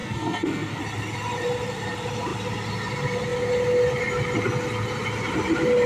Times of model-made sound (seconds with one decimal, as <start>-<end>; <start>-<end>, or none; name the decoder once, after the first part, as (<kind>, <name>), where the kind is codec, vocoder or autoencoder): 0.0-0.8 (codec, SNAC)